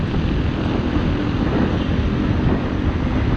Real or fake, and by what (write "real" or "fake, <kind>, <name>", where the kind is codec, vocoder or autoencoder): real